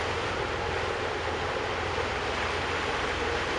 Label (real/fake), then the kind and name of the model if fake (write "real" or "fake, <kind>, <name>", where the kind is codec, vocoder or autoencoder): real